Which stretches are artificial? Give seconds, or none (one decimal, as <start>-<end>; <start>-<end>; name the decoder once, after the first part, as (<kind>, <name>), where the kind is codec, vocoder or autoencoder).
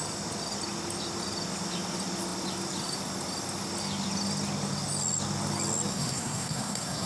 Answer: 5.9-7.1 (codec, SNAC)